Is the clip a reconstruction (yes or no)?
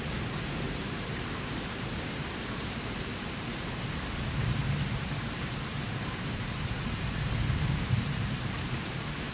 yes